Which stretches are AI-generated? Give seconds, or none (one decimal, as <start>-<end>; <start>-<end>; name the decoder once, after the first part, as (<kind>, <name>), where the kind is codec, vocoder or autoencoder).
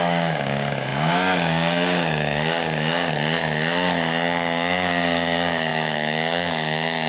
0.0-7.1 (codec, DAC)